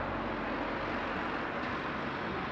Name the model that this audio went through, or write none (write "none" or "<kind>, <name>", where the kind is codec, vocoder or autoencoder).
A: none